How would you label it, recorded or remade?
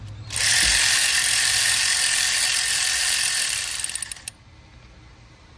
recorded